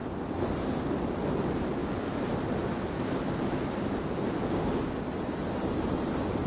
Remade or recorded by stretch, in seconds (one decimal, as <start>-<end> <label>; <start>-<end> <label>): 0.0-6.5 recorded

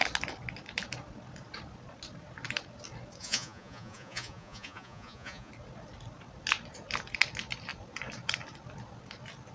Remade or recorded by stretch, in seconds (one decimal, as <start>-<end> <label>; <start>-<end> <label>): 0.0-3.2 recorded; 3.2-5.5 remade; 5.5-9.5 recorded

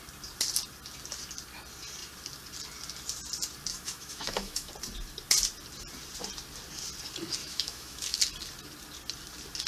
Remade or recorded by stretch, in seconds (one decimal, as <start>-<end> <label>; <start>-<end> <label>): 0.0-3.7 recorded; 3.7-4.7 remade; 4.7-7.4 recorded; 7.4-8.2 remade; 8.2-9.7 recorded

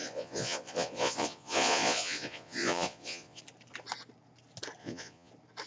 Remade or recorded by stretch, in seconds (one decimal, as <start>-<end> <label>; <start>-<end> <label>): 0.0-3.4 remade; 3.4-4.8 recorded; 4.8-5.3 remade; 5.3-5.7 recorded